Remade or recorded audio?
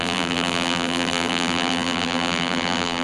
remade